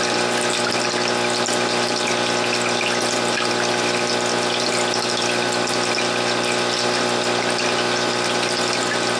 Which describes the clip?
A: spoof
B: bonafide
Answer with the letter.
B